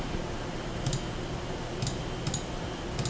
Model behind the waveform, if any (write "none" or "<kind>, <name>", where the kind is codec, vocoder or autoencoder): none